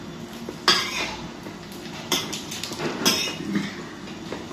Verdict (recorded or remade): recorded